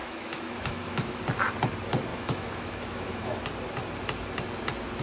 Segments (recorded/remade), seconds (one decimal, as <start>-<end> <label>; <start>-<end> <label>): 0.0-1.2 remade; 1.2-2.1 recorded; 2.1-3.4 remade; 3.4-5.0 recorded